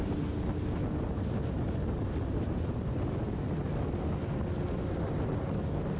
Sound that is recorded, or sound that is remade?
recorded